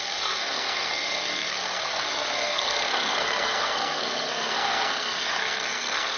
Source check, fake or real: fake